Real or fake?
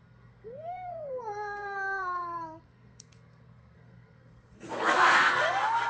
fake